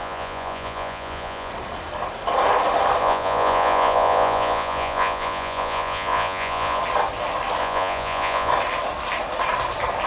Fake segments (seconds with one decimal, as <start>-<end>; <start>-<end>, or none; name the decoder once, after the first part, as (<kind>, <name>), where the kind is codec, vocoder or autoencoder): 0.0-1.5 (vocoder, Vocos); 3.0-6.8; 7.6-8.5